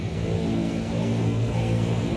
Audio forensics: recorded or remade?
remade